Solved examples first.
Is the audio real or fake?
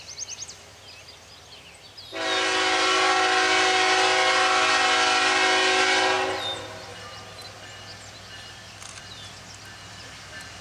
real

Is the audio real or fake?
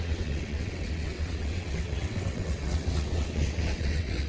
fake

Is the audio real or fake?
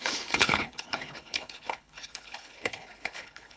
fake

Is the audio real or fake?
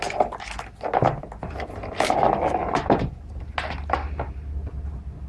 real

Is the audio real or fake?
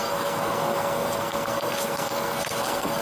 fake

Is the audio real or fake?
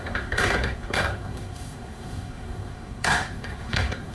fake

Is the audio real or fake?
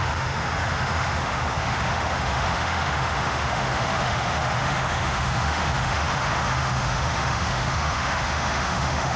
fake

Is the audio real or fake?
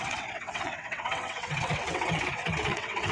fake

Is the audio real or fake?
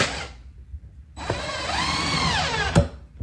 real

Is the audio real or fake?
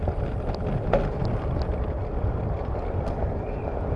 real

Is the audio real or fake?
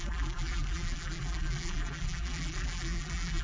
fake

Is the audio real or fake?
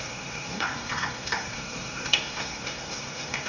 fake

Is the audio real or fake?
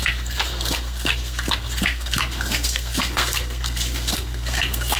fake